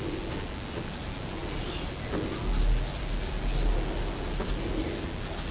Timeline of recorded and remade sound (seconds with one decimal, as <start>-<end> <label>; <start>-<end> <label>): 0.0-5.5 recorded